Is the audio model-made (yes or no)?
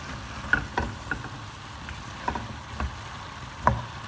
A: no